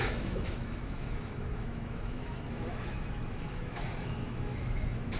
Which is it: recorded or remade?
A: remade